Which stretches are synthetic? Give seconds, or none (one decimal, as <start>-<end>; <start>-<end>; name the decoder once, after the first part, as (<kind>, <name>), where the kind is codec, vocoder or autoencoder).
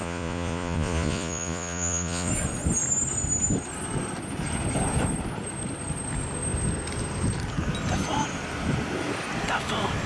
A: 0.0-2.3 (vocoder, Vocos)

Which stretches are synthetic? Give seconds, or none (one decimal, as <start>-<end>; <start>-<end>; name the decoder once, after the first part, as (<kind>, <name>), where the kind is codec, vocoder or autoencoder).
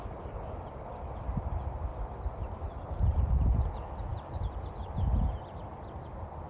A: none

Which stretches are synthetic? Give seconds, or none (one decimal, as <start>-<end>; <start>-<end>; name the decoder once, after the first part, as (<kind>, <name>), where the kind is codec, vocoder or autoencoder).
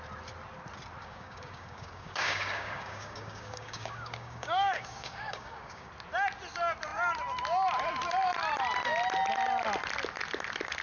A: 1.0-5.9 (codec, DAC)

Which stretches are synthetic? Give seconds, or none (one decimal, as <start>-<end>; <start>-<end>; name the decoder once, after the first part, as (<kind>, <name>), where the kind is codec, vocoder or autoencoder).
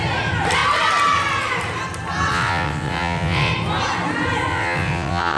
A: 2.3-3.5 (vocoder, WaveNeXt); 4.5-5.4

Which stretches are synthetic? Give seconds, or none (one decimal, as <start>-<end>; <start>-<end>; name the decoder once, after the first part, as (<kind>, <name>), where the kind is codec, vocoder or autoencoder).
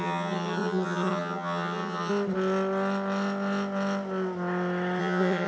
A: 0.0-2.1 (vocoder, HiFi-GAN); 5.0-5.5